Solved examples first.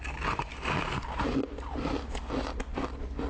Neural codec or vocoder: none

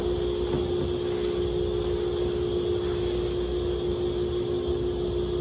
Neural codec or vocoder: none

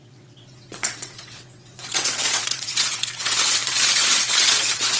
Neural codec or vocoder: vocoder, WaveNeXt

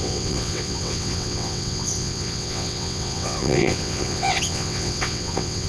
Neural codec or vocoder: vocoder, WaveNeXt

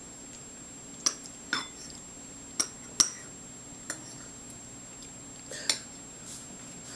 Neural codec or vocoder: none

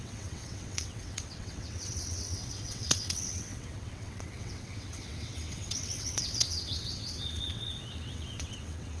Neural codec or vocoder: vocoder, WaveNeXt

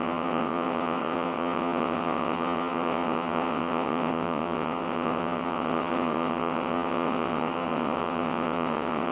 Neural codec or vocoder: vocoder, WaveNeXt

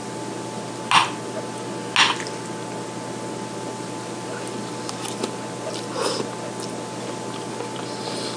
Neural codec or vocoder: none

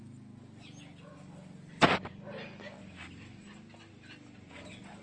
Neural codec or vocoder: none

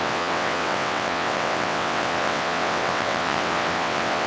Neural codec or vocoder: vocoder, WaveNeXt